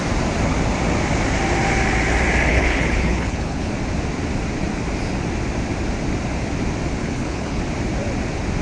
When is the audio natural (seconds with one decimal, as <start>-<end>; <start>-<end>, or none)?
0.0-2.5; 3.7-7.0; 7.6-8.6